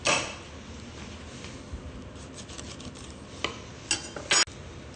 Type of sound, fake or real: real